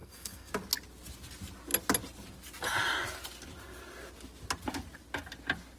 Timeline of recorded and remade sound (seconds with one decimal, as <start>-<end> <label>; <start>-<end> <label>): 0.0-0.5 remade; 0.5-5.8 recorded